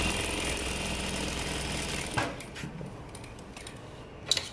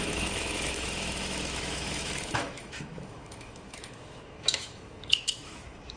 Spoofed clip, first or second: second